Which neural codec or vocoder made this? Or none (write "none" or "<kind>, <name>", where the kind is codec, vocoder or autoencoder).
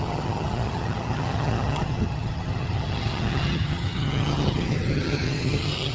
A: vocoder, HiFi-GAN